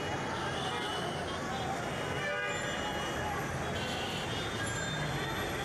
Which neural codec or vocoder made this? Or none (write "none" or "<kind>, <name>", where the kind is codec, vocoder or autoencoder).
none